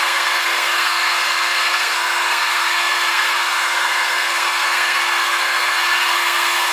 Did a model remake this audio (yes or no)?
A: yes